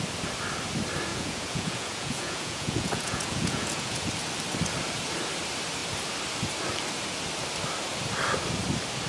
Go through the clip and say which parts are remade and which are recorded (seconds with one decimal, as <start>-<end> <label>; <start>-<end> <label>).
0.0-1.1 recorded; 1.1-4.1 remade; 4.1-9.1 recorded